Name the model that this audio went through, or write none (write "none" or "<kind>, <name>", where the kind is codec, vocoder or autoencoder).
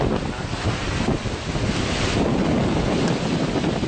none